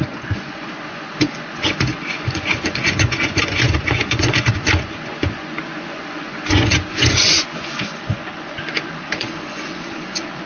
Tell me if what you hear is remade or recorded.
remade